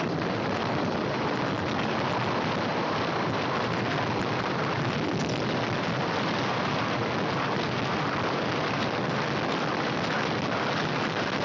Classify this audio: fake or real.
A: real